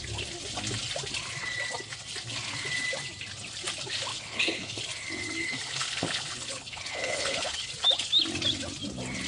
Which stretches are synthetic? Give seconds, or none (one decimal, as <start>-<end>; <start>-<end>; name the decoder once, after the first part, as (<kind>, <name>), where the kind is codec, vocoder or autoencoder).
4.1-4.8 (codec, HILCodec); 5.4-7.7